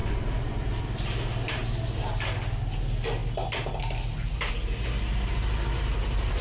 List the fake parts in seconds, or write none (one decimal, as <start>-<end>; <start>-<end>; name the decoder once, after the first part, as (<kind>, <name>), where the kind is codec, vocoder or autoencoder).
0.0-0.8 (vocoder, BigVGAN v2)